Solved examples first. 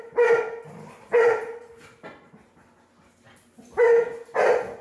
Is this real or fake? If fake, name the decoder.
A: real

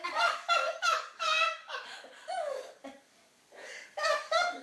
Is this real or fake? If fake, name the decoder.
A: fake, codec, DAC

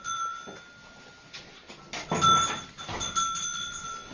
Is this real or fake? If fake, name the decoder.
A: real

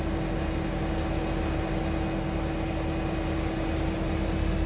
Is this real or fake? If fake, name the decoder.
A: real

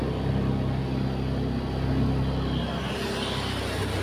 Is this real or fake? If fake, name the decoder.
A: real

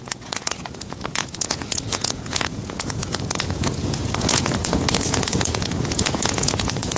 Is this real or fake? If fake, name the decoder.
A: fake, vocoder, Vocos